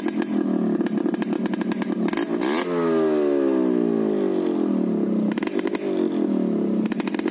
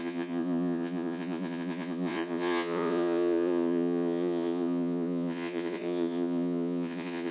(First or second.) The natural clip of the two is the first